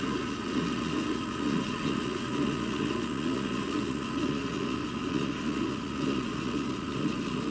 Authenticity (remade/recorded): remade